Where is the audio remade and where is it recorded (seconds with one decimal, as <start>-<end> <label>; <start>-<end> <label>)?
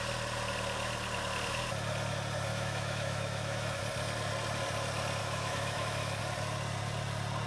0.0-2.5 recorded; 2.5-3.8 remade; 3.8-5.2 recorded; 5.2-6.2 remade; 6.2-7.5 recorded